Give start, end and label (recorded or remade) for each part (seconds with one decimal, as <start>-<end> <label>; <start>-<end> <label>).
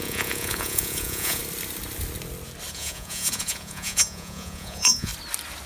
0.0-1.4 remade; 1.4-2.7 recorded; 2.7-5.1 remade; 5.1-5.7 recorded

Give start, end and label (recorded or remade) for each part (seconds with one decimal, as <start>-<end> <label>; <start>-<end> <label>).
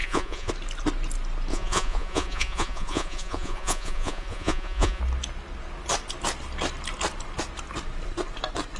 0.0-0.5 remade; 0.5-1.5 recorded; 1.5-5.0 remade; 5.0-8.8 recorded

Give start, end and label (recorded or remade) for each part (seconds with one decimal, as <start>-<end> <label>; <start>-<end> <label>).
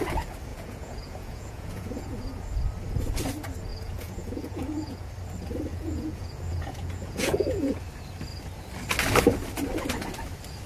0.0-0.5 recorded; 0.5-2.2 remade; 2.2-3.7 recorded; 3.7-5.1 remade; 5.1-5.7 recorded; 5.7-7.8 remade; 7.8-10.7 recorded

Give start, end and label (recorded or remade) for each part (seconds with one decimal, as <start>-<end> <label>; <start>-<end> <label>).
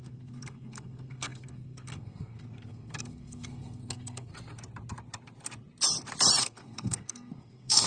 0.0-4.3 remade; 4.3-6.4 recorded; 6.4-7.9 remade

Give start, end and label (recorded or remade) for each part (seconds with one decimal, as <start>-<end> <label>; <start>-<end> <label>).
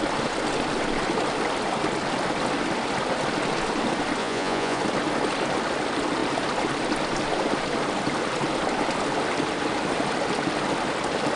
0.0-4.2 recorded; 4.2-4.8 remade; 4.8-11.4 recorded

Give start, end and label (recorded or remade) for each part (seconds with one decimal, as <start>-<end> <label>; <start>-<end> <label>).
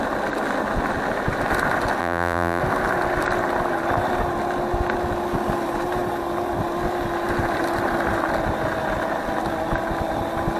0.0-2.0 recorded; 2.0-2.6 remade; 2.6-10.6 recorded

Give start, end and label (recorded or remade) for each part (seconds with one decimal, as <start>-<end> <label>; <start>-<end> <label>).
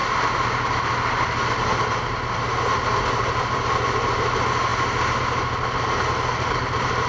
0.0-7.1 recorded